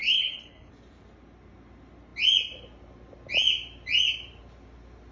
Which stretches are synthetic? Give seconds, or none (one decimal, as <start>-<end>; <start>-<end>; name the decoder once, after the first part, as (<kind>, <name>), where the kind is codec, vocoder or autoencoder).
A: 0.0-0.7 (codec, HILCodec)